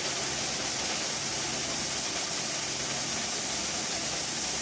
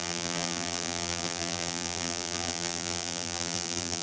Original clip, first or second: first